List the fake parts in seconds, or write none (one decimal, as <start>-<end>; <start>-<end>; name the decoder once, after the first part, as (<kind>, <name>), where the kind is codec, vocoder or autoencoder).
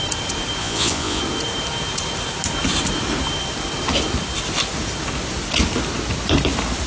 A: 0.6-1.2 (vocoder, Vocos)